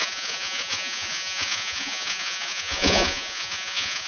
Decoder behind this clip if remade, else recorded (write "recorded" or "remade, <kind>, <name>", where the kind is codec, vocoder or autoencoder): remade, vocoder, Vocos